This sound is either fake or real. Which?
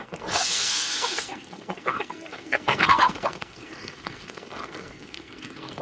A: fake